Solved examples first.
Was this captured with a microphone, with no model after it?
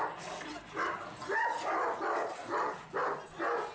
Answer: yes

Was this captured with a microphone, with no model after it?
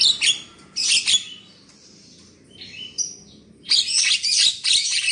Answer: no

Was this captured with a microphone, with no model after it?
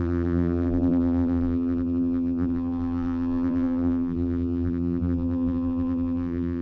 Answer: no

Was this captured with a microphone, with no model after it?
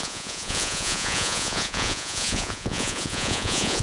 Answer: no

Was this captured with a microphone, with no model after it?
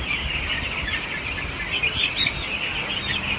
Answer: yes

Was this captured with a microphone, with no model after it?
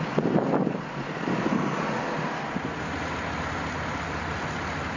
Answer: yes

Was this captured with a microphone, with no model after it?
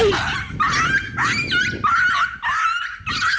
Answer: yes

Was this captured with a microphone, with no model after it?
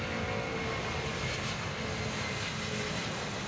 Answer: yes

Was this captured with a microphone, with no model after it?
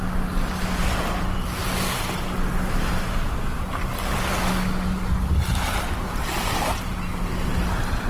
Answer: yes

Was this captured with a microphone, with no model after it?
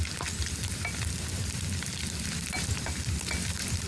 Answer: yes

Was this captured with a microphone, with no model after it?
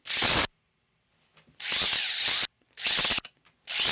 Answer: yes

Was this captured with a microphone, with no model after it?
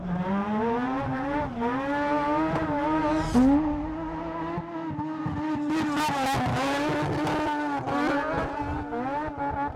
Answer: yes